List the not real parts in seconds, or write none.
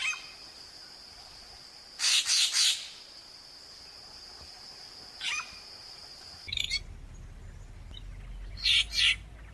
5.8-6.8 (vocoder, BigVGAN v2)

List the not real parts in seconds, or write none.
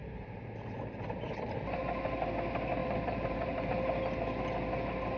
0.0-1.8 (vocoder, BigVGAN v2); 2.8-3.7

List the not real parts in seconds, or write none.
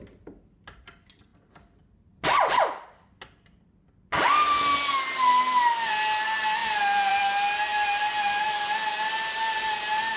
6.6-7.2 (vocoder, BigVGAN v2)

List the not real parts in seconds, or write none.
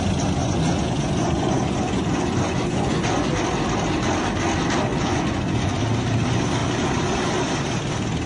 0.4-3.3 (vocoder, Vocos); 4.9-5.8